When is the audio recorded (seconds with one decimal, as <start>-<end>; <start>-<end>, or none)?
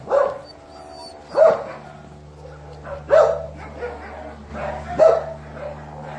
0.0-6.2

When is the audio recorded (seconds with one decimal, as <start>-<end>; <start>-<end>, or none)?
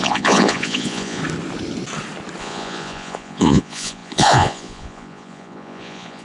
1.2-2.4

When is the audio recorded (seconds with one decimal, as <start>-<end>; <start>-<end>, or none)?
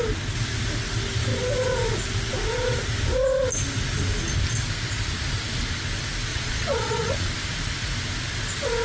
0.0-6.3; 7.3-8.8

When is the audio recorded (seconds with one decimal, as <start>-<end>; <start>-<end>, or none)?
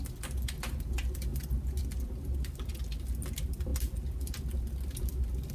0.0-5.5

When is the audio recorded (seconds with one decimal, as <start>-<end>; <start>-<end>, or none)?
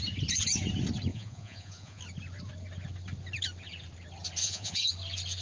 0.0-1.1; 2.0-4.4; 4.9-5.4